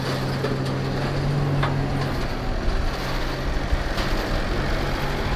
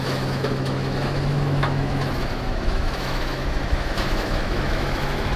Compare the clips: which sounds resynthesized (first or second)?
second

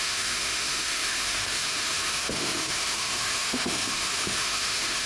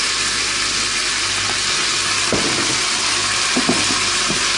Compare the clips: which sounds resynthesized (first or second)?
first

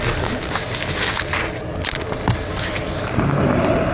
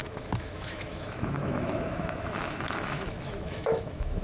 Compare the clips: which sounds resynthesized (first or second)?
second